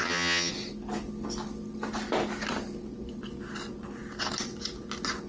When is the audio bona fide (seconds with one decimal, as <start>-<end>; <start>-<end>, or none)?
0.5-5.3